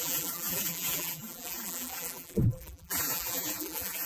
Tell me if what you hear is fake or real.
fake